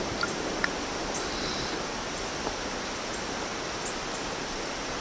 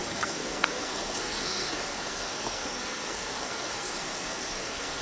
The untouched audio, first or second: first